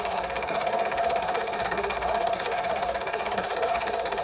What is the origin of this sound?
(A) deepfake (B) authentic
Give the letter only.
A